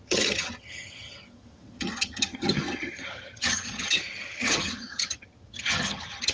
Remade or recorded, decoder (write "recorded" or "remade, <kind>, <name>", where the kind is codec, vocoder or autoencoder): remade, vocoder, HiFi-GAN